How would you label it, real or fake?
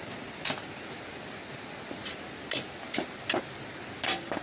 real